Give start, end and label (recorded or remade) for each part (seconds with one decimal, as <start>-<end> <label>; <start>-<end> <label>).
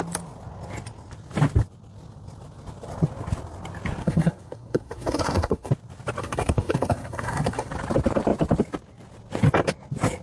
0.0-4.0 recorded; 4.0-5.7 remade; 5.7-6.2 recorded; 6.2-7.7 remade; 7.7-10.2 recorded